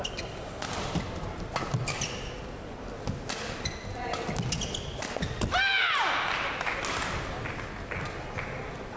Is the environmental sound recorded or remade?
recorded